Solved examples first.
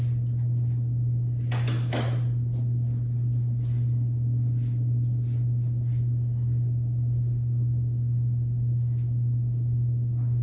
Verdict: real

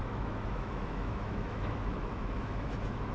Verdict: fake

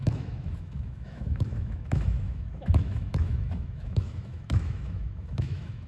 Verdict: fake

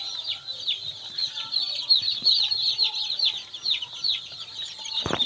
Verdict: real